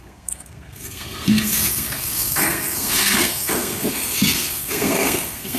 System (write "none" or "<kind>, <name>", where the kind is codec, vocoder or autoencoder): codec, SNAC